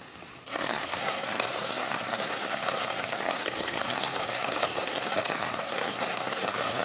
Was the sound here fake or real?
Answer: fake